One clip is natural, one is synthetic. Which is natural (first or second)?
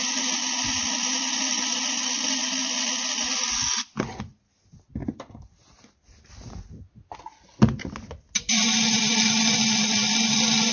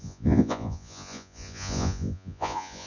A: first